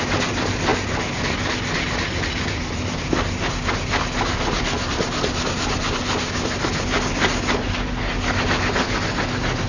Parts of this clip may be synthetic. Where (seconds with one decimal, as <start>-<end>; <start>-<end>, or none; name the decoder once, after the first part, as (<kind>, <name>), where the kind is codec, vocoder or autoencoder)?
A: none